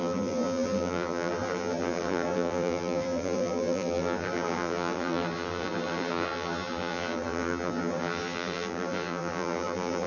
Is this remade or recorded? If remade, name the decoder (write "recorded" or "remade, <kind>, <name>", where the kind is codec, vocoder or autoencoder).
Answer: remade, vocoder, BigVGAN v2